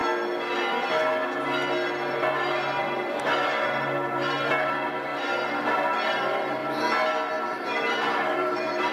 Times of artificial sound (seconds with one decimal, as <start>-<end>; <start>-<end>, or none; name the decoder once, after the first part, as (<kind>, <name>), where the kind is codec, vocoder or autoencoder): 2.8-5.1 (vocoder, BigVGAN v2); 5.6-6.6; 7.5-8.9